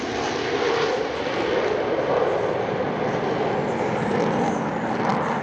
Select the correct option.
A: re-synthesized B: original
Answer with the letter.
B